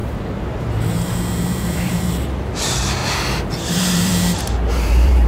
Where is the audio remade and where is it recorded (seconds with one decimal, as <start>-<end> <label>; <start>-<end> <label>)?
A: 0.0-3.0 remade; 3.0-3.5 recorded; 3.5-4.1 remade; 4.1-4.7 recorded; 4.7-5.3 remade